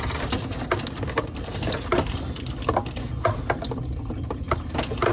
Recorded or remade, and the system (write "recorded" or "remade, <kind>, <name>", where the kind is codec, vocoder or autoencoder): recorded